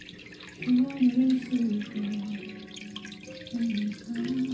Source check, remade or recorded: recorded